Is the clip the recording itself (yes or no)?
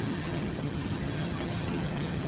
no